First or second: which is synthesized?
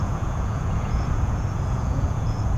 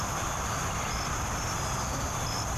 first